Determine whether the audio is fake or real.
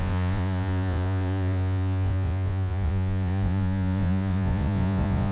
fake